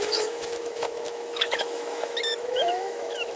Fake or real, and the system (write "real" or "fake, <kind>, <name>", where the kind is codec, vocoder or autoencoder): fake, autoencoder, DAC-VAE